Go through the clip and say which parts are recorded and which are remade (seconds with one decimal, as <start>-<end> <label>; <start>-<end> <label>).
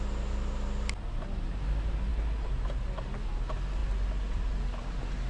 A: 0.0-5.3 recorded